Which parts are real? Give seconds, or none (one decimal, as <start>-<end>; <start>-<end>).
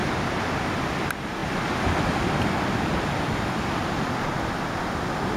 0.0-0.5